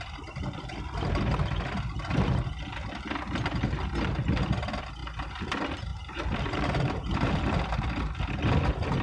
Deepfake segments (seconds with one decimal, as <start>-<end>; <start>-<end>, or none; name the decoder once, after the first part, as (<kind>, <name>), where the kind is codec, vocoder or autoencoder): 5.9-7.4 (vocoder, BigVGAN v2)